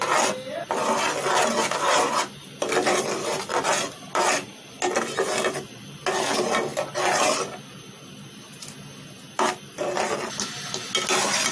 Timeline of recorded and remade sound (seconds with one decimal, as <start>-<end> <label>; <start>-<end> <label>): 0.0-11.5 recorded